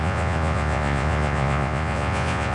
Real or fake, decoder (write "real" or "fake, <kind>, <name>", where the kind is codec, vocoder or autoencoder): fake, vocoder, Vocos